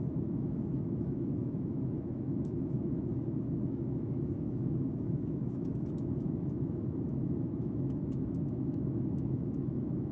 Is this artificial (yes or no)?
yes